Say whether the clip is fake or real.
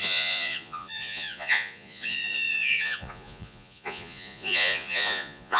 fake